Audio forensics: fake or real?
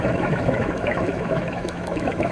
fake